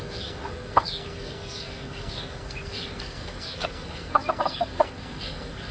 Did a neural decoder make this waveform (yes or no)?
yes